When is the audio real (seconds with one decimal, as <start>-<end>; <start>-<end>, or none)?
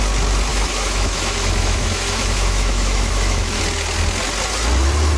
0.0-0.5; 3.6-5.2